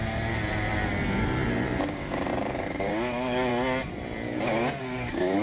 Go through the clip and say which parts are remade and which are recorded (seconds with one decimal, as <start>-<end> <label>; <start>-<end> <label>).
0.0-1.8 recorded; 1.8-3.5 remade; 3.5-4.8 recorded; 4.8-5.4 remade